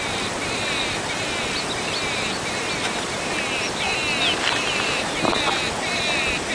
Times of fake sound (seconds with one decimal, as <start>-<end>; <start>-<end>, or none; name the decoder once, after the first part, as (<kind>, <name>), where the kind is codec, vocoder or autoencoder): none